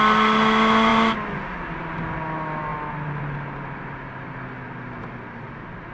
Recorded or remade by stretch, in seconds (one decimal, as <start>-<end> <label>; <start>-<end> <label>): 0.0-5.9 recorded